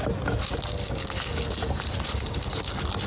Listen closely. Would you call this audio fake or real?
real